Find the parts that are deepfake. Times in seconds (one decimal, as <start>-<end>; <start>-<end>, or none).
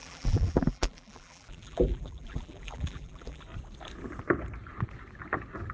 0.0-3.4